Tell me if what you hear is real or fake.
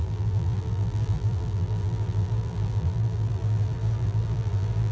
fake